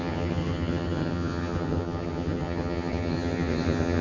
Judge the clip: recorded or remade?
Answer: remade